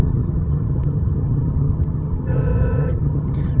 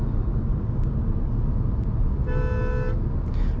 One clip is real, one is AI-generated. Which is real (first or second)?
second